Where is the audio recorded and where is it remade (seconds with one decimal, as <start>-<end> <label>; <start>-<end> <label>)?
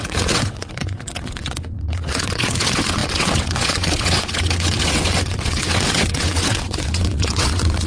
0.0-7.9 remade